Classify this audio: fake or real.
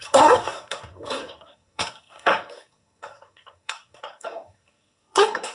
fake